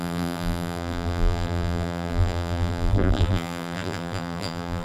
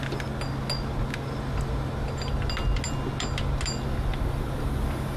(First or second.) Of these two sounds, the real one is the second